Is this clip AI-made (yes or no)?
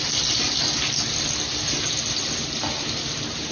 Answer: no